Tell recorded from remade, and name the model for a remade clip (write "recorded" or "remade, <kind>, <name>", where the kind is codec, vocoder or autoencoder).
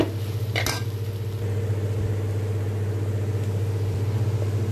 recorded